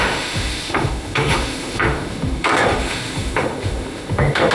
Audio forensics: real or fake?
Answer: fake